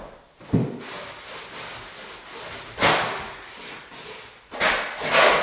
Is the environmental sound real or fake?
real